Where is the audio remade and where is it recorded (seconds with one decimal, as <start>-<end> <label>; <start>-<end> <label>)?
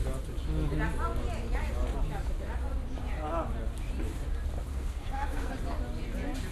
0.0-4.7 recorded; 4.7-5.5 remade; 5.5-6.5 recorded